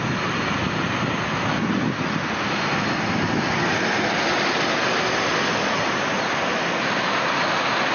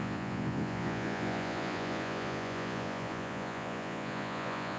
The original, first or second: first